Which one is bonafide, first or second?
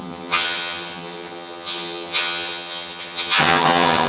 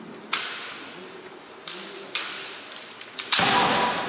second